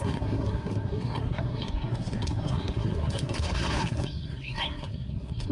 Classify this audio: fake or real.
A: fake